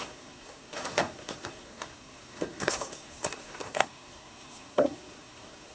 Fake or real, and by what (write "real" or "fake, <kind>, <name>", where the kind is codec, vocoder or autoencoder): fake, codec, SNAC